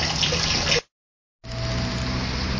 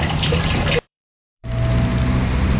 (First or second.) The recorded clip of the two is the first